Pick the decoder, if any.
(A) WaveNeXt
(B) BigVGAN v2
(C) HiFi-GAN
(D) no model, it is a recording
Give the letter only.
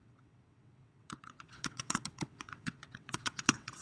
A